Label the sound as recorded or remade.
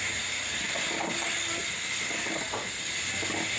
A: recorded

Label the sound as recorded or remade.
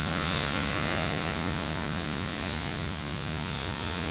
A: remade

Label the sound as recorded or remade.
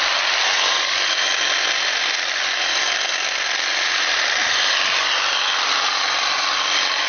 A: recorded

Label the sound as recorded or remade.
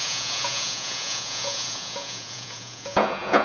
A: remade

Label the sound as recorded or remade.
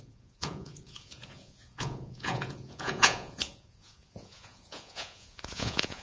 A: remade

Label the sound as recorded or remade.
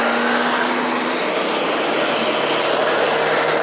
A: recorded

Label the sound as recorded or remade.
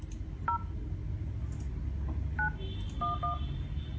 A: recorded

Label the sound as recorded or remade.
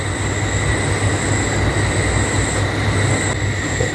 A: recorded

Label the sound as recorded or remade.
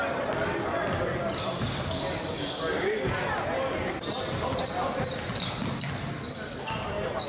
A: recorded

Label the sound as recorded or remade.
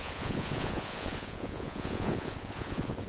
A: remade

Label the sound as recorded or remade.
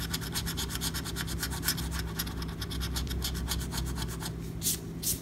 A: recorded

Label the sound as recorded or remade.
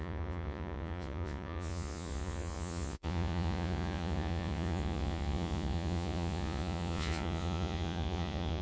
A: remade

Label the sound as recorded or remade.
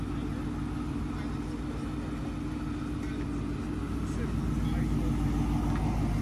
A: recorded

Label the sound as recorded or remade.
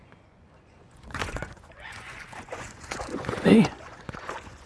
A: remade